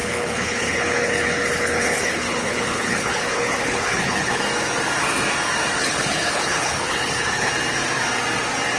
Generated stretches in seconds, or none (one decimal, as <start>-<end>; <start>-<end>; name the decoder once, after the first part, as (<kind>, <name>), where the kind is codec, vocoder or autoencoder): 0.0-4.4 (codec, HILCodec); 5.8-7.5